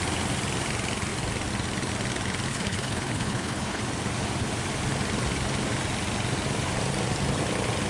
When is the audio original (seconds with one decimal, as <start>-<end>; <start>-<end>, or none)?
0.0-2.5; 3.8-7.9